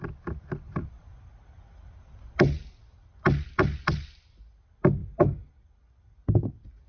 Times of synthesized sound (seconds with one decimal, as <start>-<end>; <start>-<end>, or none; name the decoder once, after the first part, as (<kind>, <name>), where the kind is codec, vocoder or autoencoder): none